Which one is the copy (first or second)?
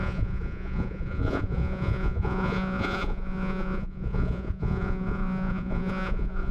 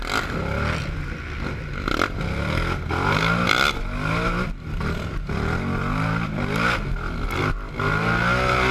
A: first